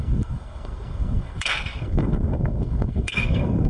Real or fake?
fake